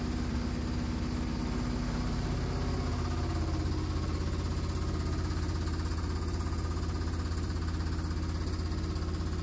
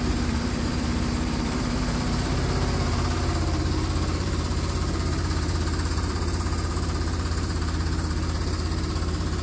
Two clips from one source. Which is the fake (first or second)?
second